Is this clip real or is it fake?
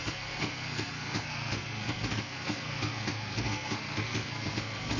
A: fake